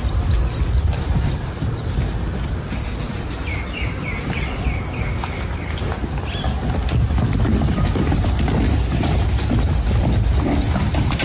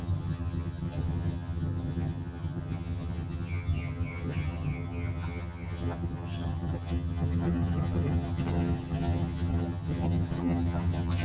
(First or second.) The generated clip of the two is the second